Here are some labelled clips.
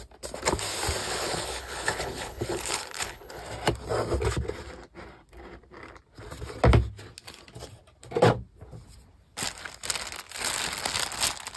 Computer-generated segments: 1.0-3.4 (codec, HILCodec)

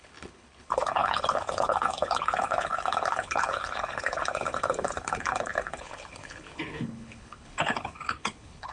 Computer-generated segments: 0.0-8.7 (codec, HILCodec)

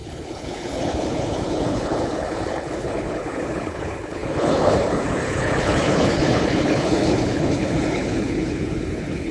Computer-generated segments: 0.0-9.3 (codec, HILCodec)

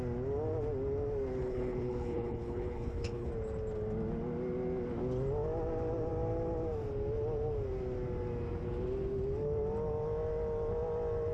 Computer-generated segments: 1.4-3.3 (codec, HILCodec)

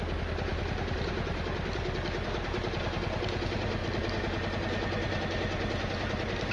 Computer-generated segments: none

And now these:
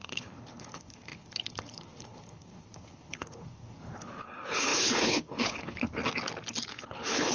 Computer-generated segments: 0.0-6.0 (codec, HILCodec); 6.7-7.3

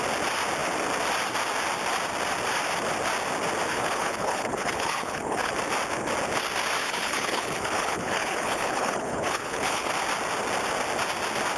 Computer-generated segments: 3.7-5.5 (codec, HILCodec); 6.8-9.9